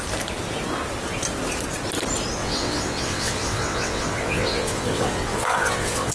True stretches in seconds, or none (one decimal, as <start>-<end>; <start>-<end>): 0.0-2.4